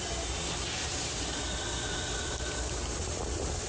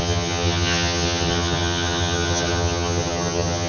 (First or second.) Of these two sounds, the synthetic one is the second